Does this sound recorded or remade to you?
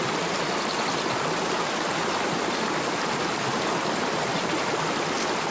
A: recorded